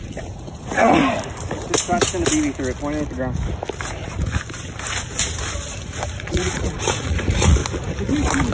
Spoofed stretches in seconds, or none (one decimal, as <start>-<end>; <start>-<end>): 0.0-1.0; 5.7-7.6